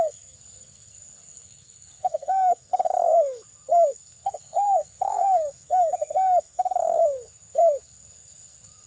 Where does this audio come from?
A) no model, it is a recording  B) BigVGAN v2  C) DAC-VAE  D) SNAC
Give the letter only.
D